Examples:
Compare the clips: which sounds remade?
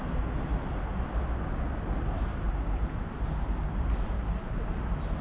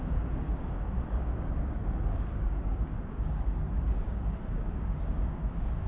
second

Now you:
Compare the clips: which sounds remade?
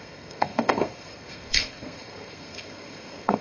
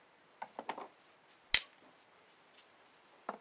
first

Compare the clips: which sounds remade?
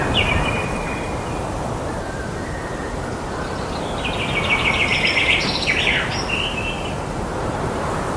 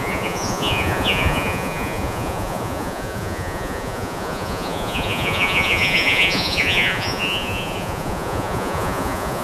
second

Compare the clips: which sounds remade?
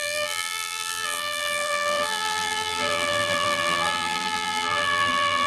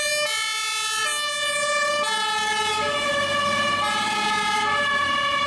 first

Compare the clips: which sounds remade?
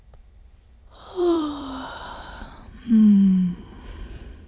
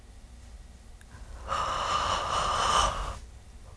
first